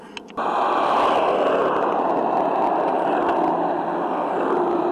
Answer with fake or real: real